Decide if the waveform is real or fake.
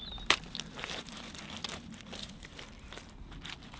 real